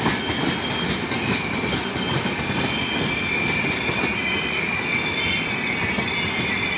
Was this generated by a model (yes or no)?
no